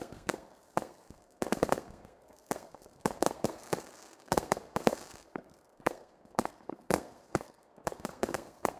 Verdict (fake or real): fake